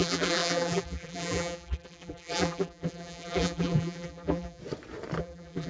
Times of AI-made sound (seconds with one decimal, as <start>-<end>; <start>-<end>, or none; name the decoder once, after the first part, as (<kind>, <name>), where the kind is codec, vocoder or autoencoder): 0.0-4.6 (vocoder, BigVGAN v2); 5.2-5.7